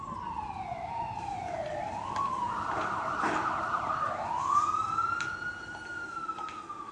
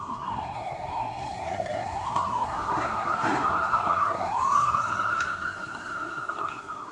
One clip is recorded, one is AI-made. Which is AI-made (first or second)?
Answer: second